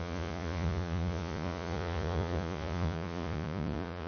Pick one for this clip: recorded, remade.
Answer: remade